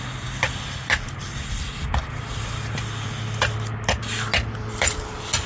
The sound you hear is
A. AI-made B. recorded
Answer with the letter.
B